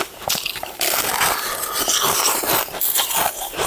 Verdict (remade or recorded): remade